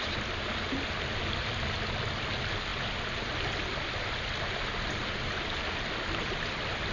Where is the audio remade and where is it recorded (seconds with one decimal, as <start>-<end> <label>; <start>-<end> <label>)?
0.0-6.9 recorded